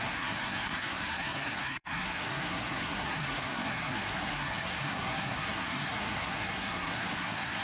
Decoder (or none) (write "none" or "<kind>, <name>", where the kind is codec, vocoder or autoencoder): codec, SNAC